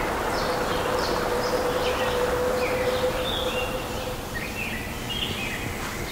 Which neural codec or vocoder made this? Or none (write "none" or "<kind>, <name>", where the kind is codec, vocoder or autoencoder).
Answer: none